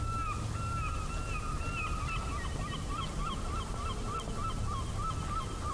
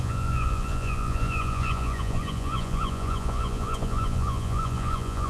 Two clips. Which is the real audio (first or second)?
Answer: first